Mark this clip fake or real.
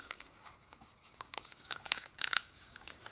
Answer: fake